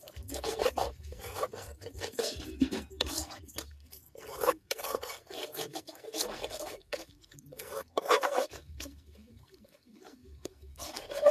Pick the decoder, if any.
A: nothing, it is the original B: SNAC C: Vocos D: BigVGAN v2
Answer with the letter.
B